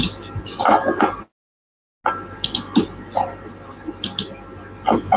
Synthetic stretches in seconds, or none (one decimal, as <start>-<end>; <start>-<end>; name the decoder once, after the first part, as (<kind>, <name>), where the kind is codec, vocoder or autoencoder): none